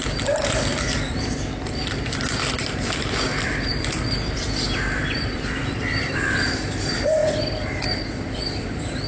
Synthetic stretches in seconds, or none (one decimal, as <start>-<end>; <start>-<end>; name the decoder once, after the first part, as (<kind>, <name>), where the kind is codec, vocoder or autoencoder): 0.0-9.1 (vocoder, BigVGAN v2)